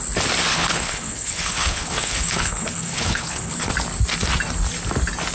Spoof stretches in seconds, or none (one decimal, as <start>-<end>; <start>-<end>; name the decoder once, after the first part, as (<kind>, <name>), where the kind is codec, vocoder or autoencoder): 0.5-3.7 (codec, HILCodec)

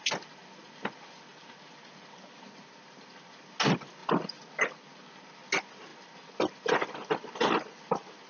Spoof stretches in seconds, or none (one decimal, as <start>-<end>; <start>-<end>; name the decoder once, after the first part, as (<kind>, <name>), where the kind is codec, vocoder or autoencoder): none

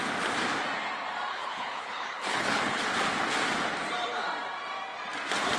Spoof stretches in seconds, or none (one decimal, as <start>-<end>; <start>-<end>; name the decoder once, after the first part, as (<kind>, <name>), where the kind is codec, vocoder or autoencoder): 1.3-2.8 (codec, HILCodec)

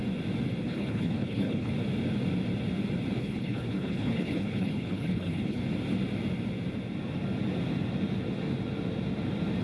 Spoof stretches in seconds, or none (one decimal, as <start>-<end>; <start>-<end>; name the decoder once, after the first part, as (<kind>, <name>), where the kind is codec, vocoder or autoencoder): 0.6-1.7 (codec, HILCodec); 3.2-5.6

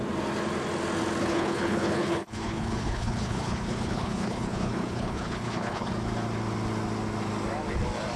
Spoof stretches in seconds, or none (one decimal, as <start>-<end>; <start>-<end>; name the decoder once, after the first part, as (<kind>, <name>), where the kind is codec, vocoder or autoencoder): 1.2-5.9 (codec, HILCodec)